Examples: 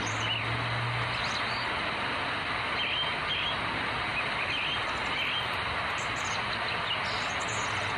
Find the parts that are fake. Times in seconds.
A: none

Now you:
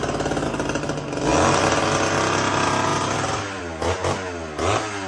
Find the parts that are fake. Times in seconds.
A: 1.3-1.8 (vocoder, BigVGAN v2); 2.9-3.6

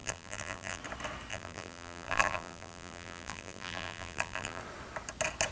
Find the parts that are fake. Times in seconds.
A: 0.0-0.8 (vocoder, BigVGAN v2); 1.3-4.6

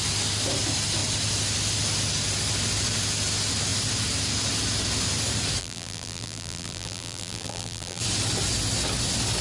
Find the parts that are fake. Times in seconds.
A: 5.6-8.0 (vocoder, BigVGAN v2)

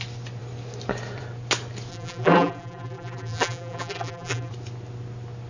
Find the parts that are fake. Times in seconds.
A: 1.9-4.5 (vocoder, BigVGAN v2)

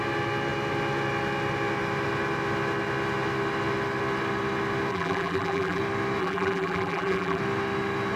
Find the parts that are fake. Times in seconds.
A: 4.9-5.8 (vocoder, BigVGAN v2); 6.2-7.4

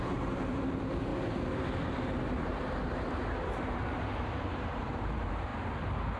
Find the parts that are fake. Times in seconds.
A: 0.0-1.1 (vocoder, BigVGAN v2); 1.9-5.5